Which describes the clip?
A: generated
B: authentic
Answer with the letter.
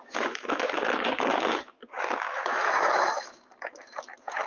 A